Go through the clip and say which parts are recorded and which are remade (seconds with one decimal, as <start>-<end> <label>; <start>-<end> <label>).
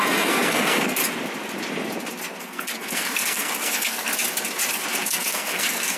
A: 0.0-1.0 remade; 1.0-2.4 recorded; 2.4-4.1 remade; 4.1-4.7 recorded; 4.7-6.0 remade